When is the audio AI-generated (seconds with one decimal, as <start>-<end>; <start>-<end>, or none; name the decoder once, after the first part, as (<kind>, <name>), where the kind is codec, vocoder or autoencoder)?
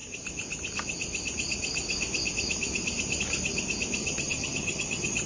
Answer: 4.0-5.3 (vocoder, HiFi-GAN)